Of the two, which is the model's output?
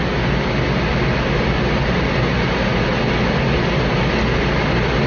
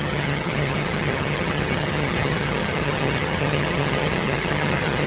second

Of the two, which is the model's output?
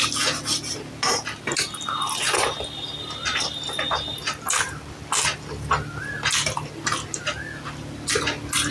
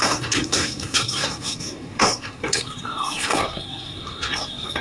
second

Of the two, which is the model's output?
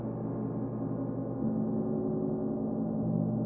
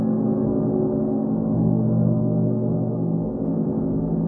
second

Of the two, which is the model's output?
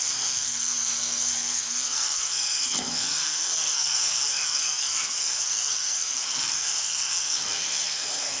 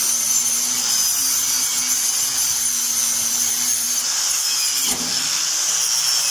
first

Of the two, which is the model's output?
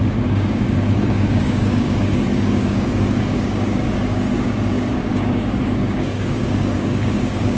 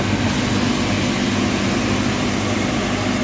first